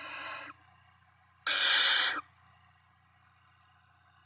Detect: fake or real real